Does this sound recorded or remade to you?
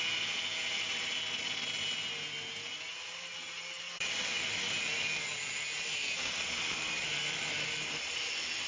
recorded